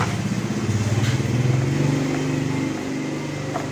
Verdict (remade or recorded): recorded